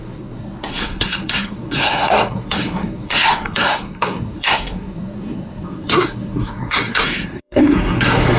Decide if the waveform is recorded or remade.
remade